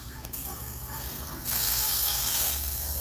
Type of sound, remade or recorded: remade